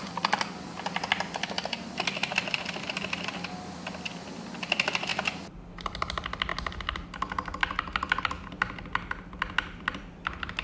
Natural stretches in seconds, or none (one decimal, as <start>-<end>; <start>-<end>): 0.0-10.6